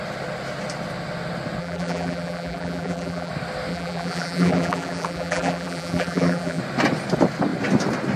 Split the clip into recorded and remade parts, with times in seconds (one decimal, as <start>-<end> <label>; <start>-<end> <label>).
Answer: 0.0-1.6 recorded; 1.6-3.3 remade; 3.3-3.7 recorded; 3.7-6.6 remade; 6.6-8.2 recorded